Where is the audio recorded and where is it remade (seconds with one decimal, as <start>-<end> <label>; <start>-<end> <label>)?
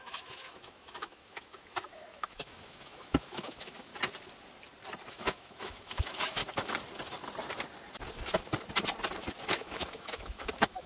0.0-3.9 remade; 3.9-5.1 recorded; 5.1-6.4 remade; 6.4-9.5 recorded; 9.5-10.9 remade